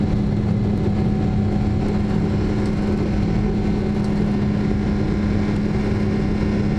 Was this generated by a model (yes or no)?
no